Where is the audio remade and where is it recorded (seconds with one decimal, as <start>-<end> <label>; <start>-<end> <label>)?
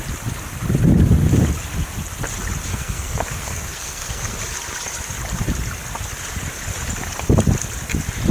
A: 0.0-2.7 recorded; 2.7-4.4 remade; 4.4-8.3 recorded